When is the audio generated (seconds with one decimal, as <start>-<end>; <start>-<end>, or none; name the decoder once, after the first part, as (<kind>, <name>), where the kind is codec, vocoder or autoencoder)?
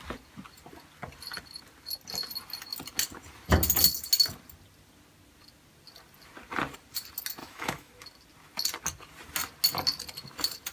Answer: 7.4-7.9 (autoencoder, DAC-VAE)